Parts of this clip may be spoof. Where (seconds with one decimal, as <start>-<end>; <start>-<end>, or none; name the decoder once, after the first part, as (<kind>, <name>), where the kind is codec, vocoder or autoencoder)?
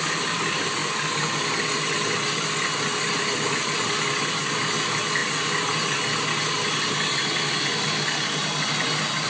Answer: none